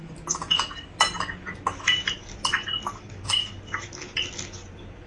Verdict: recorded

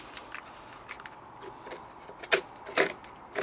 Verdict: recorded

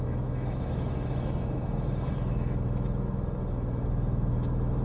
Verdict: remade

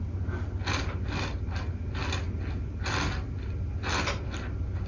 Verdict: recorded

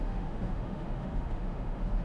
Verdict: remade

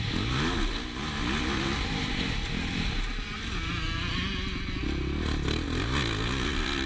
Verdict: recorded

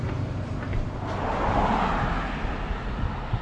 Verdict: recorded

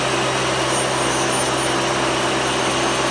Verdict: recorded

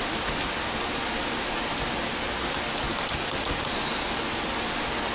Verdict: remade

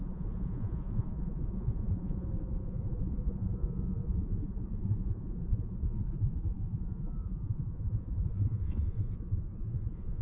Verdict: remade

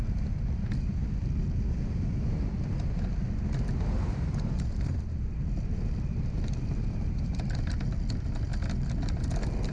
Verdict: recorded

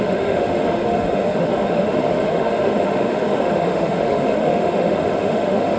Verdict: remade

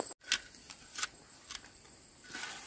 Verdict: recorded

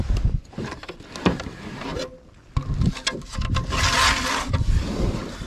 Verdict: recorded